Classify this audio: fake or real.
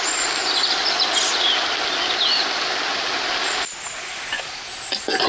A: real